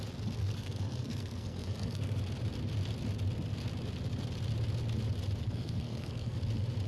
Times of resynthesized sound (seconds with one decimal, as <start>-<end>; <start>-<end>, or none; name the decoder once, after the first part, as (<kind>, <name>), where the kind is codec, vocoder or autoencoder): 0.4-2.2 (codec, SNAC); 5.4-6.4